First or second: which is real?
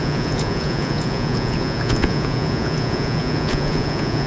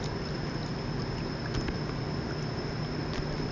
second